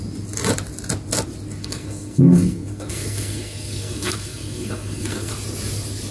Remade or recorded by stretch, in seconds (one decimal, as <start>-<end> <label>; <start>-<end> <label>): 0.0-1.6 recorded; 1.6-5.3 remade; 5.3-6.1 recorded